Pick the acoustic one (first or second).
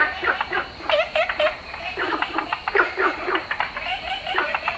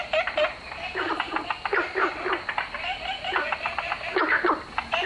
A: second